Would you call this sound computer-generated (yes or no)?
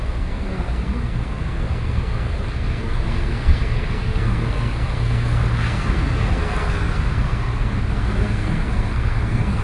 yes